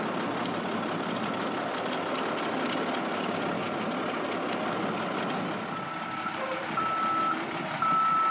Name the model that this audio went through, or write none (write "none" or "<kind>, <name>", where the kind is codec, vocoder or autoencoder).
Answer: none